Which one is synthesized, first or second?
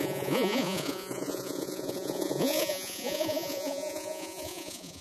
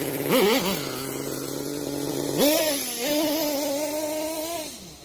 first